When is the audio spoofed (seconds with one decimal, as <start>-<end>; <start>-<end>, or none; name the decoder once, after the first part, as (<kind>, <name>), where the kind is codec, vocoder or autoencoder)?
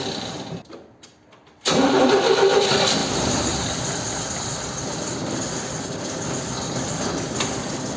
1.1-2.1 (vocoder, BigVGAN v2); 3.0-4.5